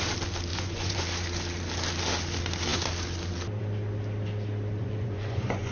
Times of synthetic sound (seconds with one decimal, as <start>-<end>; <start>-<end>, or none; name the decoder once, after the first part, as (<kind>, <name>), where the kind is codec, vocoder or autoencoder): 0.5-1.0 (vocoder, Vocos); 4.8-5.7